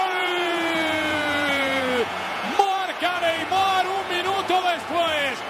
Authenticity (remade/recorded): remade